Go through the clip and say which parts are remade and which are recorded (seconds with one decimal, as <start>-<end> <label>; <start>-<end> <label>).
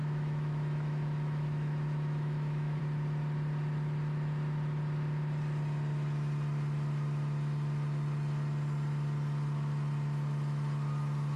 0.0-2.8 remade; 2.8-11.4 recorded